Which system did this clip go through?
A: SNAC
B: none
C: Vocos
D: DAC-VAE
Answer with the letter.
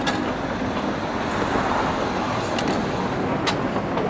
B